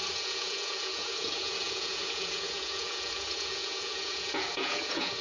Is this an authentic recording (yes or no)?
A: no